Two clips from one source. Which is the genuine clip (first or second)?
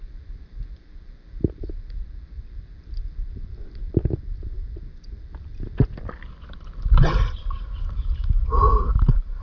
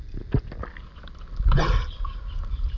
second